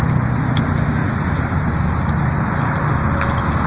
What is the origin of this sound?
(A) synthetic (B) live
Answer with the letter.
B